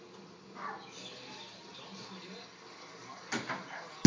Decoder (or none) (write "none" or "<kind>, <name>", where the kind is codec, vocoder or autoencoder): none